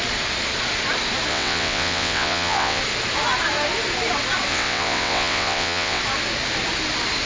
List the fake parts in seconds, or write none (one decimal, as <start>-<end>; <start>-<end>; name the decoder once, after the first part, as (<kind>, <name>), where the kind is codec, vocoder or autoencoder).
1.3-2.8 (vocoder, WaveNeXt); 4.5-6.0